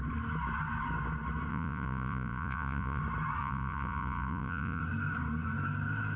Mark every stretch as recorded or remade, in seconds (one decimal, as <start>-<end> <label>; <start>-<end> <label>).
0.0-1.5 recorded; 1.5-3.0 remade; 3.0-3.4 recorded; 3.4-4.8 remade; 4.8-6.2 recorded